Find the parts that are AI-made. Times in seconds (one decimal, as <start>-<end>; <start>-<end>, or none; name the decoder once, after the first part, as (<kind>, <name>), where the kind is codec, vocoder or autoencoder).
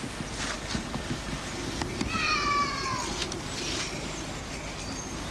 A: none